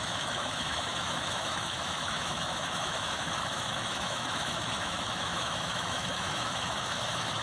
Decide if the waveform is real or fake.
fake